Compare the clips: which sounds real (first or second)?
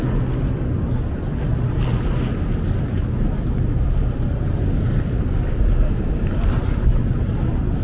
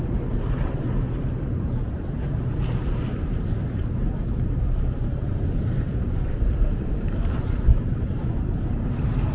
first